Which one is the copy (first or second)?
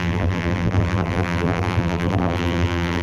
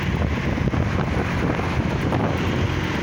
first